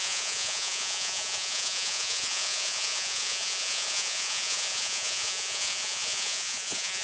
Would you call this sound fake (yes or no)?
yes